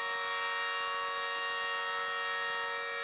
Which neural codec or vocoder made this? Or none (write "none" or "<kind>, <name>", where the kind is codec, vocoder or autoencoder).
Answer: none